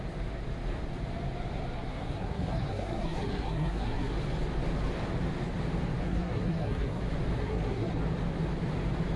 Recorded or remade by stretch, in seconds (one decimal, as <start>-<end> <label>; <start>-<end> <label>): 0.0-1.9 recorded; 1.9-4.1 remade; 4.1-6.0 recorded; 6.0-7.0 remade; 7.0-7.4 recorded; 7.4-8.0 remade; 8.0-9.2 recorded